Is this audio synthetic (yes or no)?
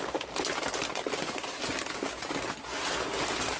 no